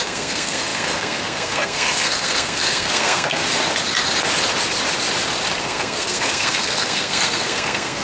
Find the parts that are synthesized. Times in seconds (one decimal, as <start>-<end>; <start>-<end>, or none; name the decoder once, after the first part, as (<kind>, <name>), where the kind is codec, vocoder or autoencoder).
0.0-3.4 (codec, SNAC); 5.6-8.0